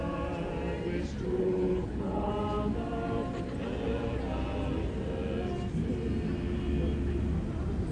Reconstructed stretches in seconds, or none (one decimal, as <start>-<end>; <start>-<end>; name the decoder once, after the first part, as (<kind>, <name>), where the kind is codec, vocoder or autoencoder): 1.4-2.3 (codec, HILCodec)